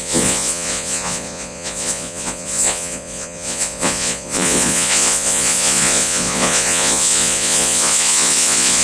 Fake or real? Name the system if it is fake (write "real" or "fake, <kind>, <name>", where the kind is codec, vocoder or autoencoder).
fake, vocoder, Vocos